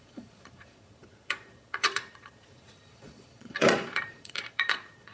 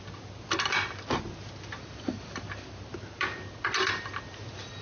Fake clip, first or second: first